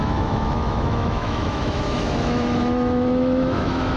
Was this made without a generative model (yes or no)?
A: no